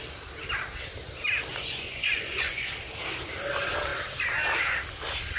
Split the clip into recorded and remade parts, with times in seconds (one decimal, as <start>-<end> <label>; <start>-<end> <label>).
0.0-1.5 recorded; 1.5-2.7 remade; 2.7-5.4 recorded